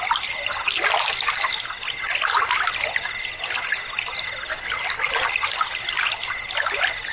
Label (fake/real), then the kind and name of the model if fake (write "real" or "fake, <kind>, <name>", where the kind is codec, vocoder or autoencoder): real